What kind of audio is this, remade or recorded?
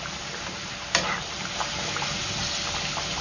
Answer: recorded